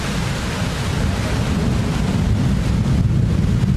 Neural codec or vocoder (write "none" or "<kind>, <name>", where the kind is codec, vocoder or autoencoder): none